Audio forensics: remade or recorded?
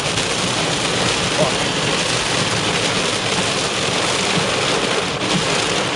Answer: remade